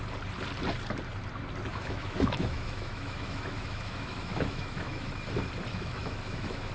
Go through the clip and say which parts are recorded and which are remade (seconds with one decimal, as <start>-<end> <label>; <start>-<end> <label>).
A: 0.0-1.7 recorded; 1.7-5.1 remade; 5.1-5.7 recorded; 5.7-6.7 remade

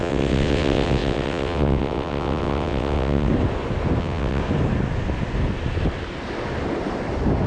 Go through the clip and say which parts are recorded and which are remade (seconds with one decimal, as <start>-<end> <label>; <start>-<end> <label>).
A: 0.0-3.3 remade; 3.3-4.0 recorded; 4.0-4.4 remade; 4.4-7.5 recorded

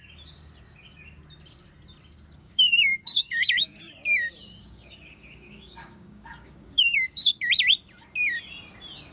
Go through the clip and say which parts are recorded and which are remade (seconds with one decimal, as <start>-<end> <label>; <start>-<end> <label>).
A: 0.0-2.4 recorded; 2.4-3.9 remade; 3.9-4.6 recorded; 4.6-7.5 remade; 7.5-9.1 recorded

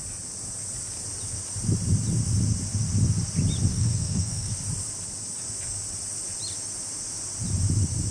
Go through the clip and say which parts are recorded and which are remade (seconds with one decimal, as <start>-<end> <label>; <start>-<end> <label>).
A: 0.0-3.7 recorded; 3.7-4.5 remade; 4.5-8.1 recorded

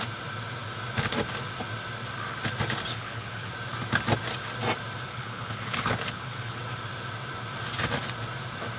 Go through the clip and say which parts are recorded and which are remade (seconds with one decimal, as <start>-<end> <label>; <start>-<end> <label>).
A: 0.0-2.9 recorded; 2.9-3.5 remade; 3.5-5.1 recorded; 5.1-6.6 remade; 6.6-8.8 recorded